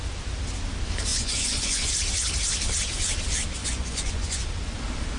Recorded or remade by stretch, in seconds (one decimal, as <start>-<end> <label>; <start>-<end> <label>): 0.0-1.1 recorded; 1.1-1.9 remade; 1.9-3.6 recorded; 3.6-4.4 remade; 4.4-5.2 recorded